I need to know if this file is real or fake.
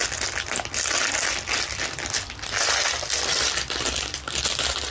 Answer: fake